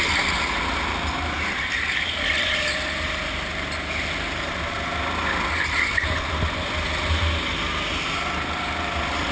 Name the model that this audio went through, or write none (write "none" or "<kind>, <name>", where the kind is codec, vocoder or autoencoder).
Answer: none